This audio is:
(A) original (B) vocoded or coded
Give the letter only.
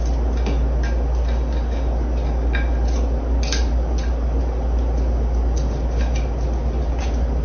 A